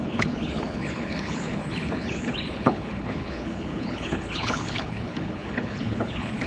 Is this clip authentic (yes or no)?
no